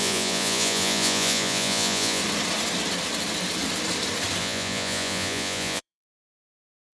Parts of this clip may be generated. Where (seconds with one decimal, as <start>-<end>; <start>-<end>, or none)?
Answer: 0.0-2.2; 4.4-6.9